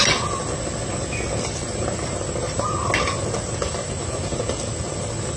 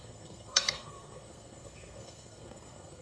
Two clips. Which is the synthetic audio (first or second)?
second